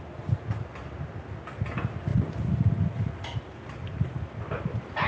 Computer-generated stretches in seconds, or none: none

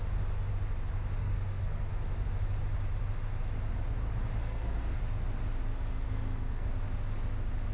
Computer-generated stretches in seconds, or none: 1.2-1.9 (codec, SNAC); 4.4-5.0; 5.7-6.7